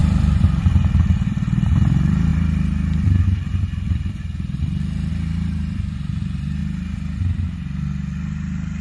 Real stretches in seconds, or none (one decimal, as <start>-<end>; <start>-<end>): 6.6-8.8